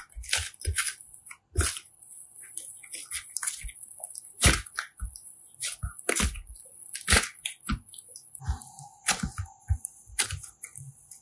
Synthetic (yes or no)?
no